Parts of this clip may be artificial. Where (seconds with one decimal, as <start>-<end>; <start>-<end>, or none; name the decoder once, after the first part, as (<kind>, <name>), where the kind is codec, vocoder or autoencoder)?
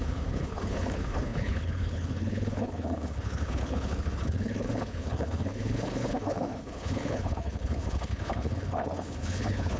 0.0-9.8 (codec, HILCodec)